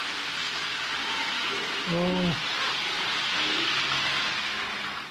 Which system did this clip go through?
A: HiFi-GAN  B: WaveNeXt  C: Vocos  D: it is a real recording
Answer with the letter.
D